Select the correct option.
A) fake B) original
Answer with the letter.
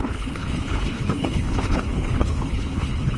A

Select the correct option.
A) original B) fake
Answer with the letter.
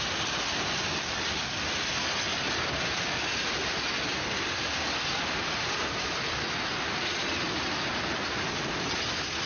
A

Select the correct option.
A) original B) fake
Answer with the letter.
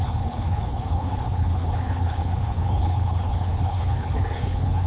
B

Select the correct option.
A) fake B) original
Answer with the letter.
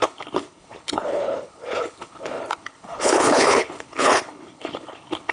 A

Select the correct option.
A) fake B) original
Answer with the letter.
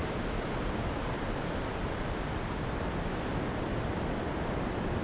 B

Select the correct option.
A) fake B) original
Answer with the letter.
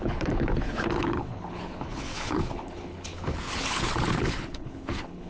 A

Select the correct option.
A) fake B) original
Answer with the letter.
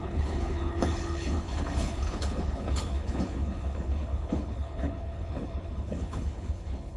A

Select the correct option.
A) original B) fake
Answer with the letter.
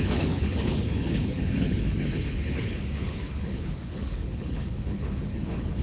B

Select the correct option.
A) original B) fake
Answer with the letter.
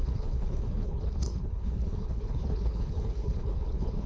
B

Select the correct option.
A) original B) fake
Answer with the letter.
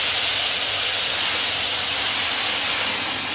A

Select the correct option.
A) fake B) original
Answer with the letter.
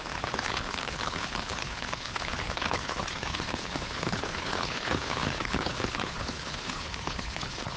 A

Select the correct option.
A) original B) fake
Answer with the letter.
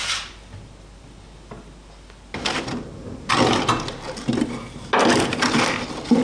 A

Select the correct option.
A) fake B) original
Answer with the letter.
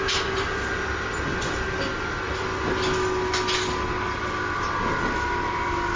B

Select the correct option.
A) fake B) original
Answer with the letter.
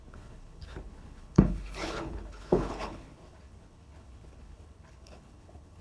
A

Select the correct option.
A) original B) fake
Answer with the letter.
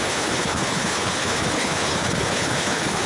B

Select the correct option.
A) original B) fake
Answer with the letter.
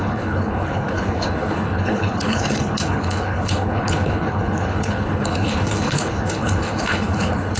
B